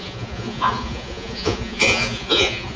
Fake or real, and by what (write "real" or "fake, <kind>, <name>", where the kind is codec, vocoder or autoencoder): fake, vocoder, Vocos